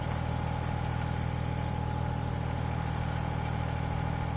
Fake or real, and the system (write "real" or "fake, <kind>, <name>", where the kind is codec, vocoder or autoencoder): real